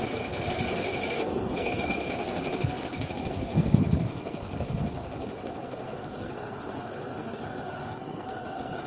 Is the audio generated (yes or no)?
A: yes